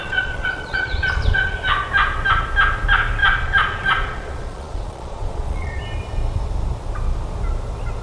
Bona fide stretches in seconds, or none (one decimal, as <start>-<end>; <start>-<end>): 1.6-3.2; 5.8-8.0